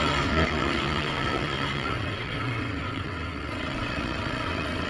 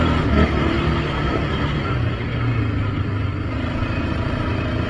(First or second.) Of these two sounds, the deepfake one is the first